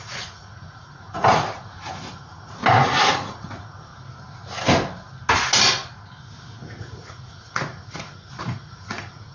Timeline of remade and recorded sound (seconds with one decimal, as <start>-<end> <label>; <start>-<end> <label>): 0.0-2.6 remade; 2.6-3.1 recorded; 3.1-3.9 remade; 3.9-6.8 recorded; 6.8-9.3 remade